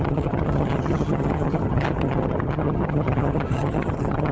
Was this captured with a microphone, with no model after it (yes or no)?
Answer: no